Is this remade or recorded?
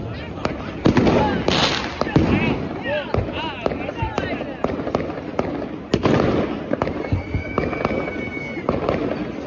recorded